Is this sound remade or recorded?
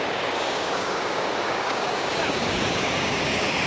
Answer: remade